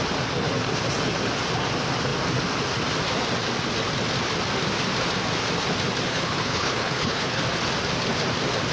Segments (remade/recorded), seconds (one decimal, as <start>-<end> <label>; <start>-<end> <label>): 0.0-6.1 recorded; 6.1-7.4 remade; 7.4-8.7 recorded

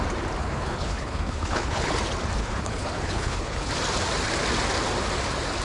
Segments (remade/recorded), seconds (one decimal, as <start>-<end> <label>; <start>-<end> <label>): 0.0-0.4 recorded; 0.4-1.9 remade; 1.9-2.4 recorded; 2.4-3.7 remade; 3.7-5.6 recorded

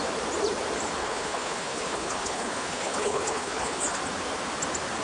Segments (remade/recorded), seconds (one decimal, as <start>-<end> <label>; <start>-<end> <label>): 0.0-1.0 recorded; 1.0-4.0 remade; 4.0-5.0 recorded

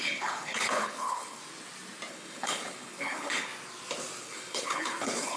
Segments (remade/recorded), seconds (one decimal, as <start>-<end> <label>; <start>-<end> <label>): 0.0-1.4 remade; 1.4-2.1 recorded; 2.1-3.5 remade; 3.5-4.2 recorded; 4.2-5.4 remade

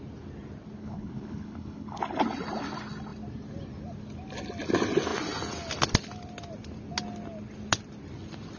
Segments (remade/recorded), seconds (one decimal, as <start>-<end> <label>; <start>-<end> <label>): 0.0-0.8 recorded; 0.8-2.0 remade; 2.0-8.6 recorded

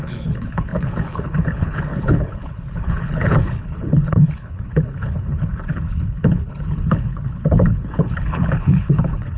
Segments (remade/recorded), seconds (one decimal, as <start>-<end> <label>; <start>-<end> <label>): 0.0-9.4 remade